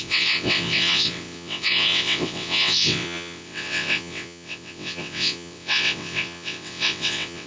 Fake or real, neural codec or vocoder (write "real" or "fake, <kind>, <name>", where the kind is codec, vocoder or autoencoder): fake, vocoder, WaveNeXt